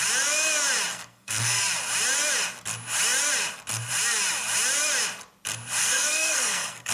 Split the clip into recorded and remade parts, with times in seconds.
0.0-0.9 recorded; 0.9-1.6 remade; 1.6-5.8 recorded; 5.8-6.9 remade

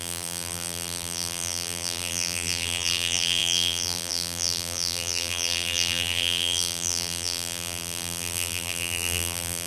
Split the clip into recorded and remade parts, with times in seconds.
0.0-9.7 remade

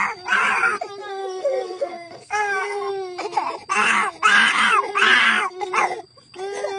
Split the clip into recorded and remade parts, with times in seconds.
0.0-1.0 recorded; 1.0-2.9 remade; 2.9-5.2 recorded; 5.2-5.7 remade; 5.7-6.8 recorded